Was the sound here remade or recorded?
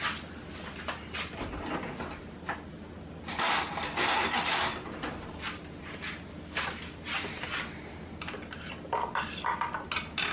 recorded